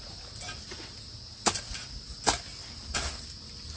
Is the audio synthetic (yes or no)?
no